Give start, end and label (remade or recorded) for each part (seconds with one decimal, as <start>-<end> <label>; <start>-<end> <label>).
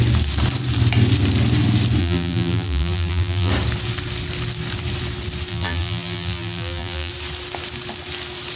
0.0-2.0 recorded; 2.0-3.5 remade; 3.5-5.5 recorded; 5.5-7.1 remade; 7.1-8.6 recorded